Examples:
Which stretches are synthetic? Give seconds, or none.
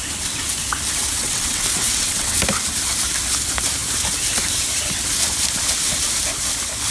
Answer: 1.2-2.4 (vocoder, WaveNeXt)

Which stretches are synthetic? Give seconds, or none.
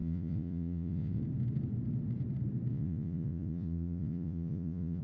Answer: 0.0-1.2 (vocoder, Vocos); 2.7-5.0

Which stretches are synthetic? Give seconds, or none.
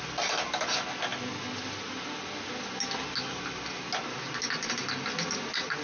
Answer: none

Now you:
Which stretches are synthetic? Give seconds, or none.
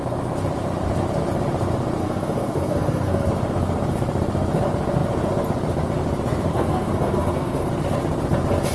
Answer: 2.0-3.3 (codec, SNAC); 6.5-7.7